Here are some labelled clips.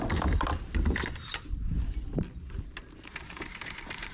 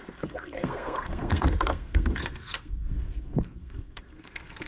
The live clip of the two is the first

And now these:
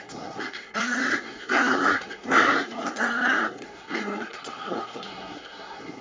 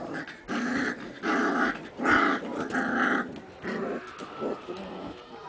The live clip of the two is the second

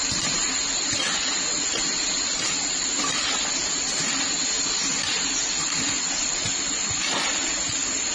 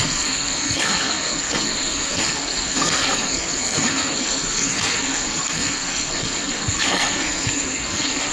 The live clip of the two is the first